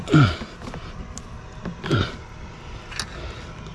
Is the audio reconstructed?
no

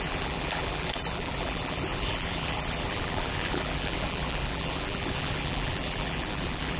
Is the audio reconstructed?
yes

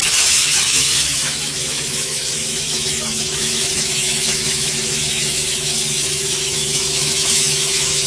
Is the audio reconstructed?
yes